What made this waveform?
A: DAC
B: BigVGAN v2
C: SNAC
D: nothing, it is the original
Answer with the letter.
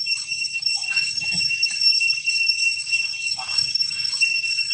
A